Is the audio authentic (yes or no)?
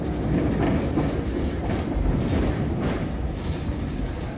yes